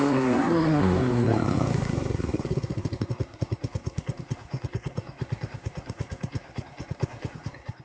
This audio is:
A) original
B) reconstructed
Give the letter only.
B